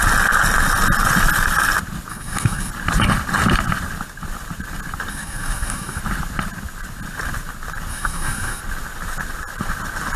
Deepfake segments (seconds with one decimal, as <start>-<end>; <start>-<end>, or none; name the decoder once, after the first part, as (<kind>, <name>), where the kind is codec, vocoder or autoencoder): 2.1-2.7 (codec, DAC); 5.1-6.0; 7.9-8.6